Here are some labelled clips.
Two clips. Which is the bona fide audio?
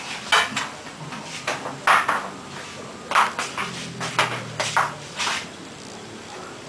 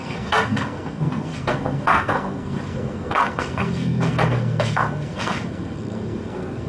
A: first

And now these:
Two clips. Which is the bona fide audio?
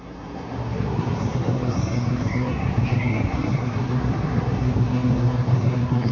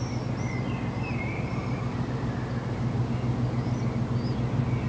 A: second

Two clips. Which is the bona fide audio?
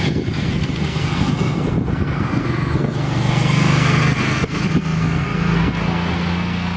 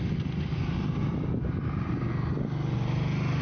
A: second